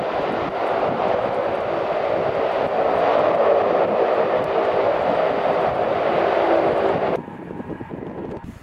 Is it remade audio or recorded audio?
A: recorded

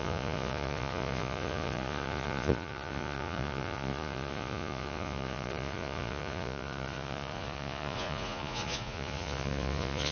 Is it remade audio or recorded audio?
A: remade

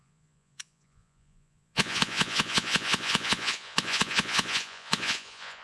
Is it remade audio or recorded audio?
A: remade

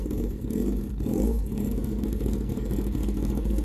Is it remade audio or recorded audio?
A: remade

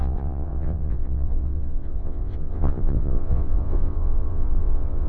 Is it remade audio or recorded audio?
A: remade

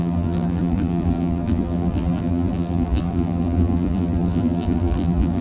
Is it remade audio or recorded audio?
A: remade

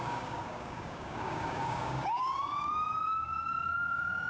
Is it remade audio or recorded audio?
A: remade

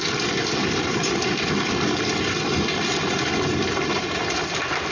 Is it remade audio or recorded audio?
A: recorded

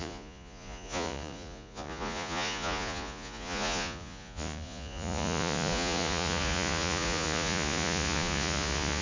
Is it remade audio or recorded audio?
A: remade